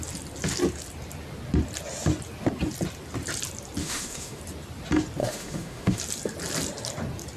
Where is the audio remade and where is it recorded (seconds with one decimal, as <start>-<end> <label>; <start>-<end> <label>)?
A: 0.0-3.8 recorded; 3.8-4.4 remade; 4.4-5.2 recorded; 5.2-6.0 remade; 6.0-7.4 recorded